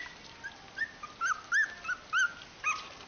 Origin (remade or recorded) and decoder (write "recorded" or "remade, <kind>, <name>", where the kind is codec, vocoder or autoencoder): recorded